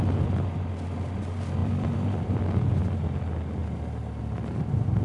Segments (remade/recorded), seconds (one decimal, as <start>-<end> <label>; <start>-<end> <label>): 0.0-1.6 recorded; 1.6-3.2 remade; 3.2-5.0 recorded

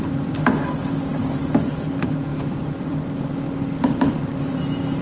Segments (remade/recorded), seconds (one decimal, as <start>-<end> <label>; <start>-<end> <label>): 0.0-1.1 recorded; 1.1-1.7 remade; 1.7-2.3 recorded; 2.3-3.3 remade; 3.3-5.0 recorded

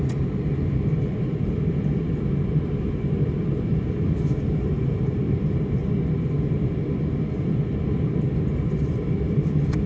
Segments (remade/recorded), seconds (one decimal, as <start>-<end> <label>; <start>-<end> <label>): 0.0-5.8 remade; 5.8-6.4 recorded; 6.4-9.9 remade

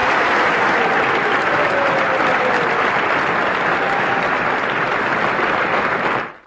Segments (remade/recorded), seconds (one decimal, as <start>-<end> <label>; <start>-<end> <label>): 0.0-6.5 recorded

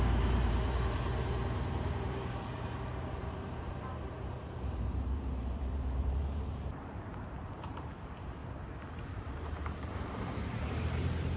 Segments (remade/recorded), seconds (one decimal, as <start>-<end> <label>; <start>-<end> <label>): 0.0-8.4 remade; 8.4-9.1 recorded; 9.1-11.4 remade

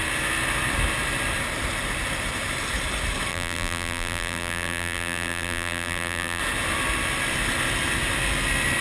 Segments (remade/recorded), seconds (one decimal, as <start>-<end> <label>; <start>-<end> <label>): 0.0-3.3 recorded; 3.3-6.4 remade; 6.4-8.8 recorded

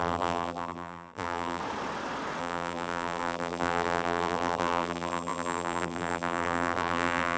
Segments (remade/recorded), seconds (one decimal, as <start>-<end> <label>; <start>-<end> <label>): 0.0-1.6 remade; 1.6-2.4 recorded; 2.4-7.4 remade

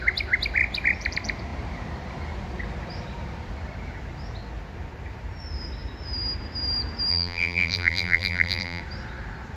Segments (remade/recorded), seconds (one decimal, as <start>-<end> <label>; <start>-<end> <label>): 0.0-7.1 recorded; 7.1-8.8 remade; 8.8-9.6 recorded